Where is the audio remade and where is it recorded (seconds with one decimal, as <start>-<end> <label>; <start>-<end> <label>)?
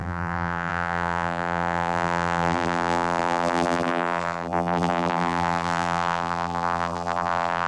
0.0-7.7 remade